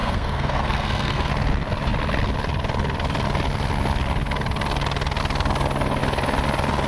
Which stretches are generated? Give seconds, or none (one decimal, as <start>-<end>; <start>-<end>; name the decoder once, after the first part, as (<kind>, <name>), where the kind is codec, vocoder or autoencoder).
0.0-1.3 (codec, SNAC)